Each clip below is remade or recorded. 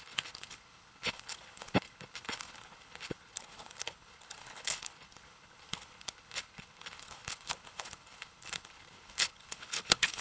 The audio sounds remade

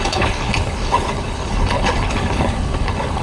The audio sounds remade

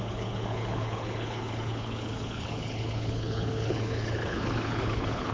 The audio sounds remade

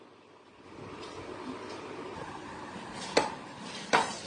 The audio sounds recorded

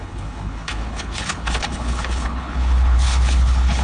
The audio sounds remade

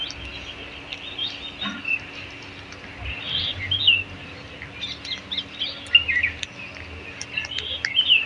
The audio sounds recorded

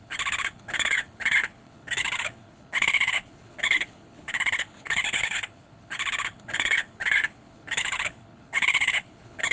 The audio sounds remade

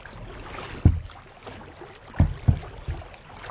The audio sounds recorded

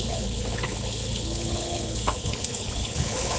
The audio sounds remade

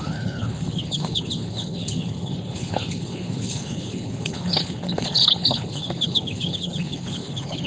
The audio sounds remade